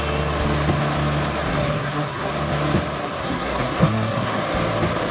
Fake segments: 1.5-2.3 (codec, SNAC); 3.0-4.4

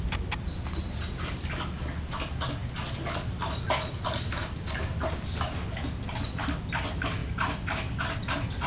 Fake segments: none

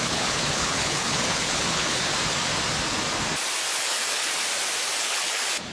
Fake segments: 0.0-2.1 (codec, HILCodec); 3.7-4.3; 5.0-5.7

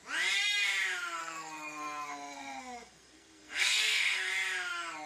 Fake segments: 1.2-4.3 (codec, SNAC)

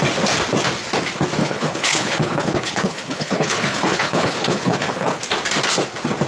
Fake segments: 1.4-5.2 (codec, HILCodec)

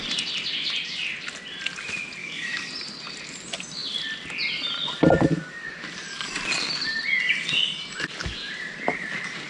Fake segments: 2.2-2.7 (codec, DAC)

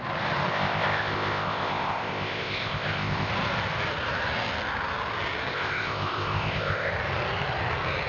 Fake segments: 0.5-3.3 (codec, ZipCodec); 5.5-6.9

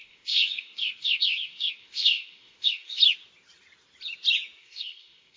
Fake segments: 0.0-3.0 (codec, ZipCodec); 4.6-5.4